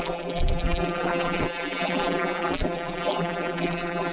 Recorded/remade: remade